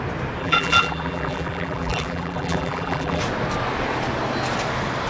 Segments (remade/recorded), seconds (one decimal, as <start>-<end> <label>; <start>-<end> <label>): 0.0-0.4 recorded; 0.4-3.2 remade; 3.2-5.1 recorded